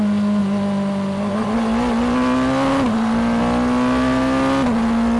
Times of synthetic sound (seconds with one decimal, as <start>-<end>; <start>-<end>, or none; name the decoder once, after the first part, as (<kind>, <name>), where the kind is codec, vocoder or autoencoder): none